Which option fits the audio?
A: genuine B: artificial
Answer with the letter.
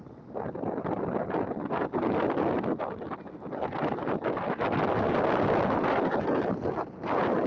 A